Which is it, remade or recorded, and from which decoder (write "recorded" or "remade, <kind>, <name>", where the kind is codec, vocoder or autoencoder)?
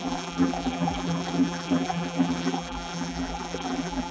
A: remade, vocoder, BigVGAN v2